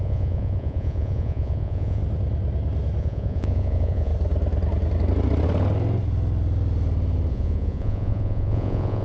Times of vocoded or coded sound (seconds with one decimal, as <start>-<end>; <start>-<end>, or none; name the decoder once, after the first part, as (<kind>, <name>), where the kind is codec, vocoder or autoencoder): 0.0-2.0 (vocoder, Vocos); 3.0-4.1; 7.3-9.0